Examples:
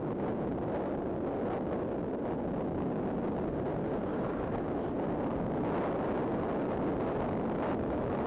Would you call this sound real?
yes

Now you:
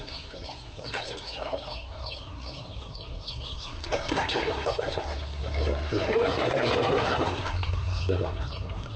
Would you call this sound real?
no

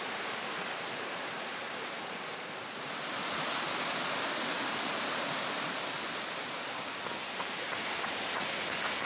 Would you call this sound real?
yes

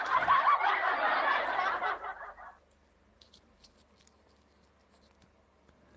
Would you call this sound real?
yes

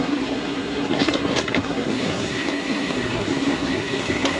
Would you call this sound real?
no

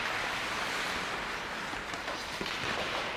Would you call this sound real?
yes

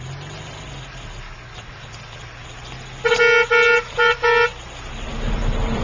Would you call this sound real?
yes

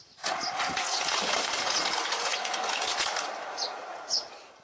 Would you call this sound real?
no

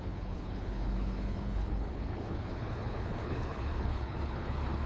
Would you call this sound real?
no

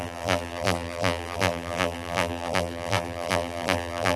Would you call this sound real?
no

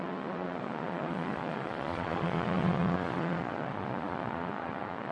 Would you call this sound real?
no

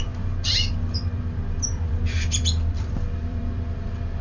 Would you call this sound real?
no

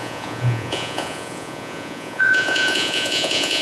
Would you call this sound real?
no